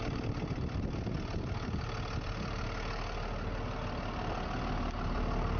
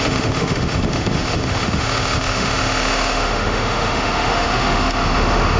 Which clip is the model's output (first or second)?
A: second